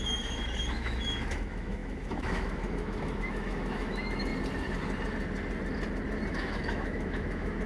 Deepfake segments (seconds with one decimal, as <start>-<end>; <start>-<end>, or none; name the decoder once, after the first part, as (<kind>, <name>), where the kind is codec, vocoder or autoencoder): 0.0-4.3 (autoencoder, DAC-VAE); 6.3-7.7